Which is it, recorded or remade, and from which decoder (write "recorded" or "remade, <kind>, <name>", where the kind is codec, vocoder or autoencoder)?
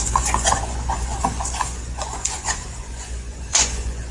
remade, vocoder, Vocos